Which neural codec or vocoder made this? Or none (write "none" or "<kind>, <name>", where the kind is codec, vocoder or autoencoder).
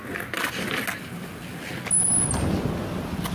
none